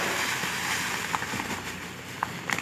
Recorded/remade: recorded